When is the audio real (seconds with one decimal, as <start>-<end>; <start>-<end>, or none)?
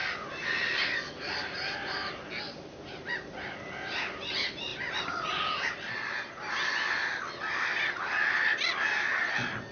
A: 0.0-9.7